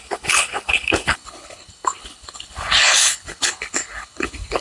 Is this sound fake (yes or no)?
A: yes